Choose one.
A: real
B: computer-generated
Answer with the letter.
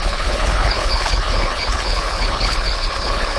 B